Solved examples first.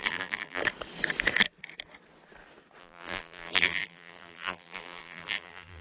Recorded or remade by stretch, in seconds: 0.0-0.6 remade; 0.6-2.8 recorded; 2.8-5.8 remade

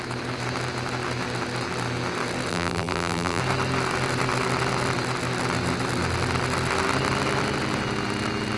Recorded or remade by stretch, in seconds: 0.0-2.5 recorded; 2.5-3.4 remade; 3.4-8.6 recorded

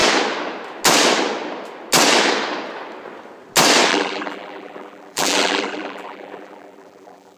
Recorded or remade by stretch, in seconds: 0.0-3.9 recorded; 3.9-7.4 remade